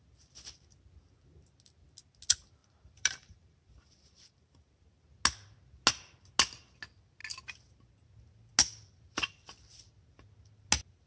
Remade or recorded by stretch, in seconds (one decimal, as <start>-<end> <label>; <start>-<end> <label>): 0.0-2.6 recorded; 2.6-4.8 remade; 4.8-11.1 recorded